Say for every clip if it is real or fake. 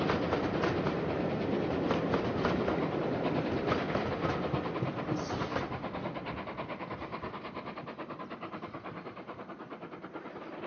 real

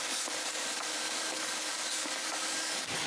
fake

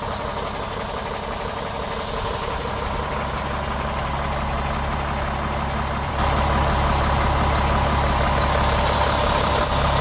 real